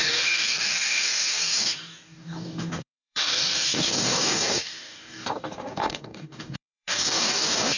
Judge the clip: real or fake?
fake